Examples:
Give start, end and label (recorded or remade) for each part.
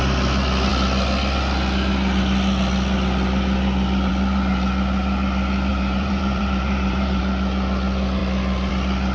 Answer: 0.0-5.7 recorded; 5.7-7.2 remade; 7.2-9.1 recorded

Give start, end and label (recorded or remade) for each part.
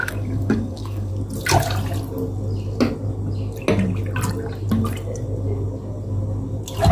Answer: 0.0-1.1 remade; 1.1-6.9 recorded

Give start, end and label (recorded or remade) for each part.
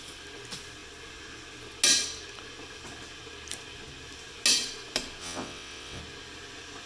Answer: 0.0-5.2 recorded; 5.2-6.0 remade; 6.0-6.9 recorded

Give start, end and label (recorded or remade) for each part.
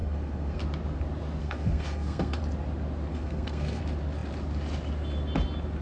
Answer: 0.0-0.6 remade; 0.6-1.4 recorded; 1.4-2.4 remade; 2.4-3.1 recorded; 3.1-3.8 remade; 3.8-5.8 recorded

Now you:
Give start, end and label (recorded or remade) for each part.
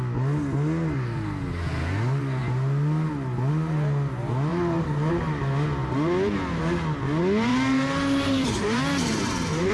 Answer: 0.0-4.5 recorded; 4.5-5.1 remade; 5.1-7.5 recorded; 7.5-9.7 remade